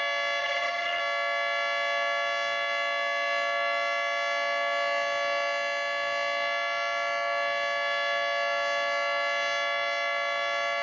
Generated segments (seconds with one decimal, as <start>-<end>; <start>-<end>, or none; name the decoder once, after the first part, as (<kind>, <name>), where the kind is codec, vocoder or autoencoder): 0.4-1.0 (vocoder, HiFi-GAN)

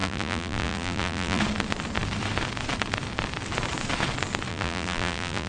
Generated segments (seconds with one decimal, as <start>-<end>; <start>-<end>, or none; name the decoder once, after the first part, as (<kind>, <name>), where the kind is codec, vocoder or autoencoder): 0.0-1.4 (vocoder, BigVGAN v2); 4.5-5.5

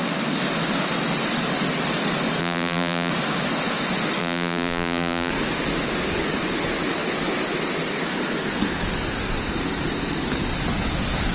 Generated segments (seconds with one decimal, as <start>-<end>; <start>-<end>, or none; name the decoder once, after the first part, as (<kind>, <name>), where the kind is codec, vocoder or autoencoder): 2.4-3.1 (vocoder, BigVGAN v2); 4.2-5.3

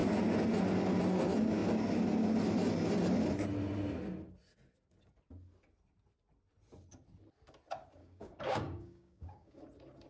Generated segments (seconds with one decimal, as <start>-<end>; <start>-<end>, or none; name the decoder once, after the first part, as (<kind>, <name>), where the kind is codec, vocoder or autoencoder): 8.0-9.6 (codec, DAC)

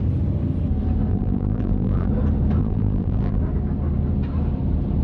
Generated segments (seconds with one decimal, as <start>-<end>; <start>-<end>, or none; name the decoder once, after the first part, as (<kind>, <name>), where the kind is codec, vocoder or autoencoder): 1.1-2.1 (vocoder, BigVGAN v2); 2.6-3.4

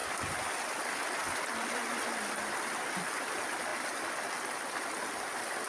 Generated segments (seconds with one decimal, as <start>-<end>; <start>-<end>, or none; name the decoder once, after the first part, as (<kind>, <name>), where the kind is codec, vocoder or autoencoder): 0.0-0.5 (vocoder, BigVGAN v2); 1.2-1.8

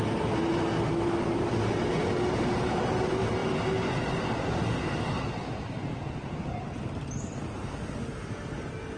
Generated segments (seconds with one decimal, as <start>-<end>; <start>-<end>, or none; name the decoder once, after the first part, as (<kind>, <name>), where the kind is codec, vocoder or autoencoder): none